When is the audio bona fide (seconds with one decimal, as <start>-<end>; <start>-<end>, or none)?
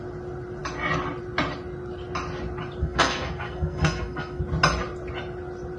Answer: 0.0-2.8; 4.4-5.8